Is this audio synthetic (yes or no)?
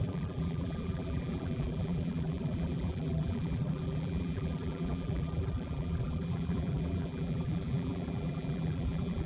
yes